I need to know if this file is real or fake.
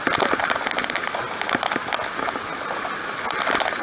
real